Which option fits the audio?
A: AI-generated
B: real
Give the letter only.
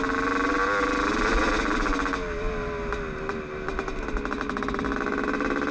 B